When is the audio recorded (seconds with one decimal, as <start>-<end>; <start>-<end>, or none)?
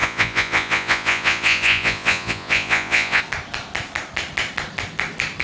3.2-5.4